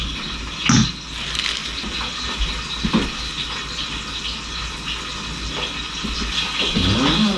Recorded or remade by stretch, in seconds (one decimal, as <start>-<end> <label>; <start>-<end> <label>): 0.0-7.4 recorded